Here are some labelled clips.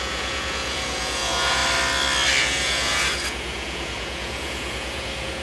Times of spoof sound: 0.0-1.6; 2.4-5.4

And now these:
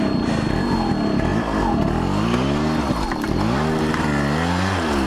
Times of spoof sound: none

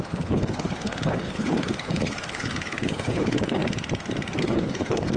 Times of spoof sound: 0.0-3.6; 4.4-5.2